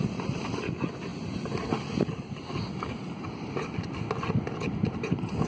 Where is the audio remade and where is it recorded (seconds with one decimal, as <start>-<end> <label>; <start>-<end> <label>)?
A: 0.0-5.5 recorded